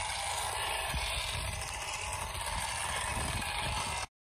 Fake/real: real